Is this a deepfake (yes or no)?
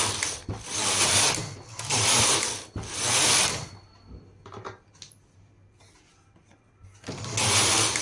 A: no